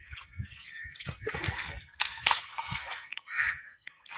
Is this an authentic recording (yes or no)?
no